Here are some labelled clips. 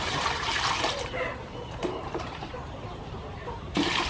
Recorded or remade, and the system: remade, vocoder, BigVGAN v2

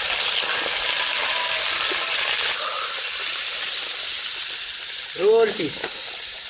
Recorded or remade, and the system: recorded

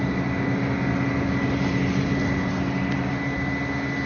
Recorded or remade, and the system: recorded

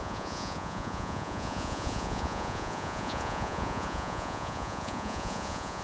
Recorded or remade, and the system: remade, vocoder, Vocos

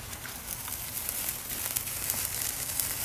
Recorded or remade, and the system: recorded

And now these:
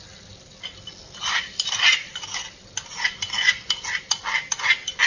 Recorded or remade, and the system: recorded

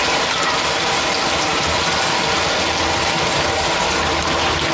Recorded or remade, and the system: recorded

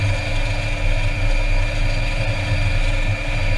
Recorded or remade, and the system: recorded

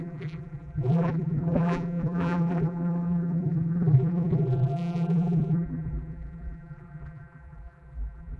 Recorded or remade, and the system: remade, vocoder, BigVGAN v2